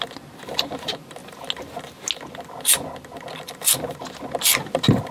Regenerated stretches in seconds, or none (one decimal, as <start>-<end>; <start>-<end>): none